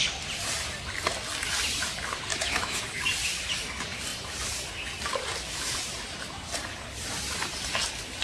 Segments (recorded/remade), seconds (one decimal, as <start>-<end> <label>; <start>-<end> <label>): 0.0-2.3 recorded; 2.3-2.8 remade; 2.8-8.2 recorded